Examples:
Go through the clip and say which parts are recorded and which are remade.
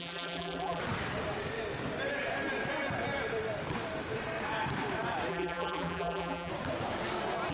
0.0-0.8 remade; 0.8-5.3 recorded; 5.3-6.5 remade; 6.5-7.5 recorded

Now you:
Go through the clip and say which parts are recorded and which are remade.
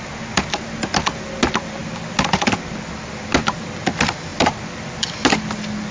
0.0-5.9 recorded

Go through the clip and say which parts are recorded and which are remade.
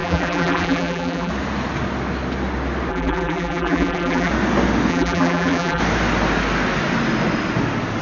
0.0-1.3 remade; 1.3-2.9 recorded; 2.9-4.3 remade; 4.3-4.9 recorded; 4.9-5.8 remade; 5.8-8.0 recorded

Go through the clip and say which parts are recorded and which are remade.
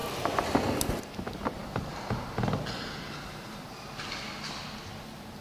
0.0-5.4 recorded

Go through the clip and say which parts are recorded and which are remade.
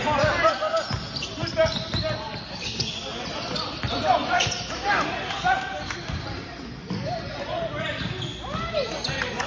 0.0-9.5 recorded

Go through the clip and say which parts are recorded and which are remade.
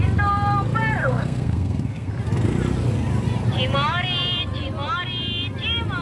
0.0-1.0 recorded; 1.0-2.1 remade; 2.1-6.0 recorded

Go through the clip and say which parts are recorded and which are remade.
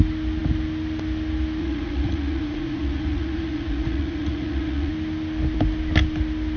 0.0-1.6 recorded; 1.6-4.9 remade; 4.9-6.6 recorded